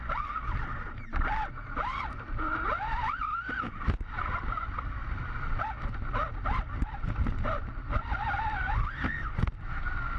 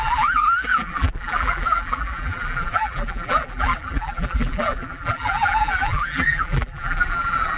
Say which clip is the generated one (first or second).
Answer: second